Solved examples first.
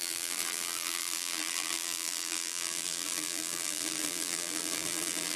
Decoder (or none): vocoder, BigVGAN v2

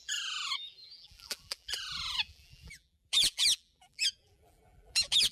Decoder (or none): vocoder, BigVGAN v2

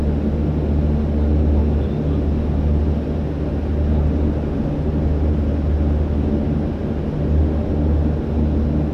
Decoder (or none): none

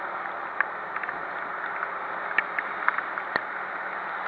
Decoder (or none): none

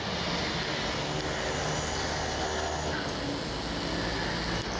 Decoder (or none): none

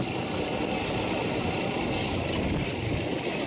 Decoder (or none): vocoder, BigVGAN v2